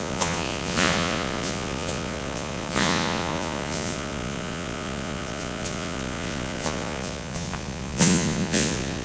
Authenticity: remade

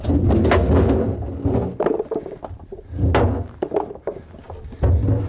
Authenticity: recorded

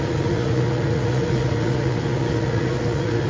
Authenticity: remade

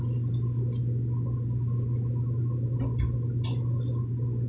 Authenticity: recorded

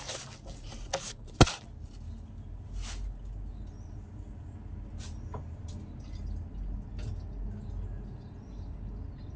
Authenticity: recorded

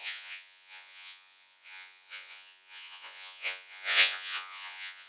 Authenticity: remade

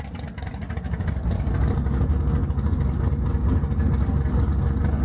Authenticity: recorded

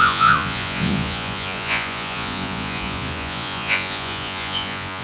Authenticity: remade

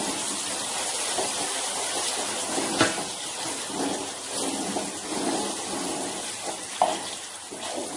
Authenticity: recorded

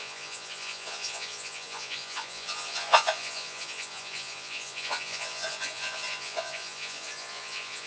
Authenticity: remade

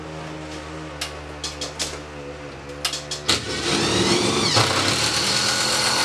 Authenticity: recorded